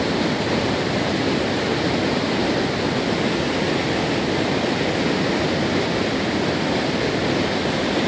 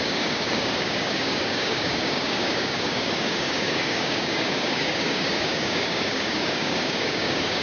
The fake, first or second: second